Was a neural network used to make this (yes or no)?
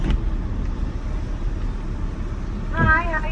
no